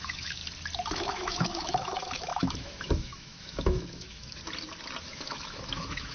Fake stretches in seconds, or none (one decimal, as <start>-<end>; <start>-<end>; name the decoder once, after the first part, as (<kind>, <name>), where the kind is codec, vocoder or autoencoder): 0.0-0.4 (autoencoder, DAC-VAE); 0.9-4.4; 5.0-6.1